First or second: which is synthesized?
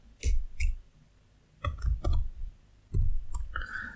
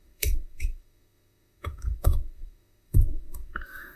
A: second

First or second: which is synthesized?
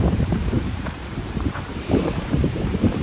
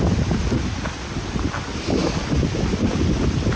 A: first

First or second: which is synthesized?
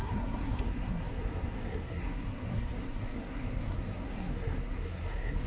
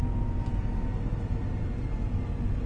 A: first